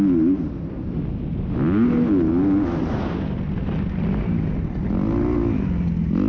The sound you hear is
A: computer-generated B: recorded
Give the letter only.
B